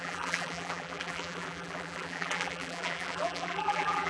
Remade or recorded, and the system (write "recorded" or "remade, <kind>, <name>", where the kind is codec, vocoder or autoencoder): remade, vocoder, BigVGAN v2